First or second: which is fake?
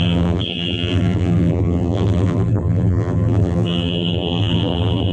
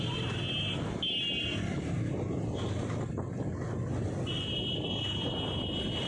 first